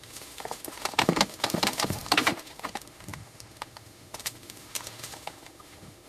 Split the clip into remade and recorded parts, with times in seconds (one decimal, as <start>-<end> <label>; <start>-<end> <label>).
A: 0.0-6.1 remade